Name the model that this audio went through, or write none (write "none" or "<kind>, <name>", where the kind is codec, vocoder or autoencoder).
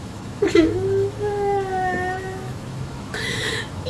autoencoder, DAC-VAE